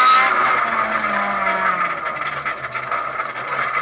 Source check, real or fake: real